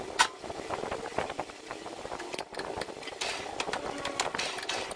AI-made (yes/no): no